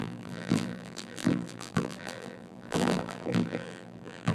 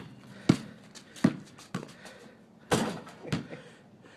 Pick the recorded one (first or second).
second